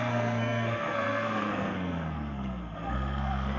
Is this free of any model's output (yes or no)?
no